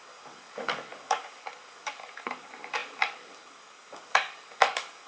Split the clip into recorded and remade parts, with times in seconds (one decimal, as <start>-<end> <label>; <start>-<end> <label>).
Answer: 0.0-5.1 remade